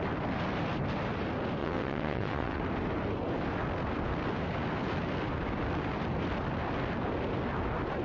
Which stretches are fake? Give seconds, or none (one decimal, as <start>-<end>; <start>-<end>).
1.6-2.6